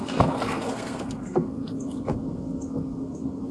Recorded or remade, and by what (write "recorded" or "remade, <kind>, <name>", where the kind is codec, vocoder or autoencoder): remade, codec, SNAC